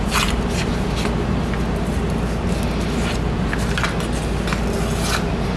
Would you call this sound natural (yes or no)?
yes